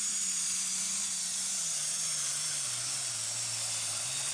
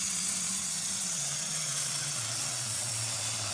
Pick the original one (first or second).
first